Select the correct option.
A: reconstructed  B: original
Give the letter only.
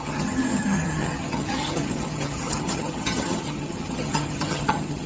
A